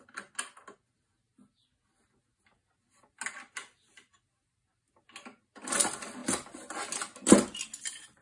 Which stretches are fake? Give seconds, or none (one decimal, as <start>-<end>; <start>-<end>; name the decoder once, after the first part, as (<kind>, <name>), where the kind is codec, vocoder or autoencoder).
none